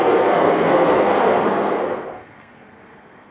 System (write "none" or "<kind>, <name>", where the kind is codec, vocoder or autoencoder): codec, SNAC